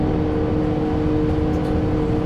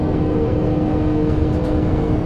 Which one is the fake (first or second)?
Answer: second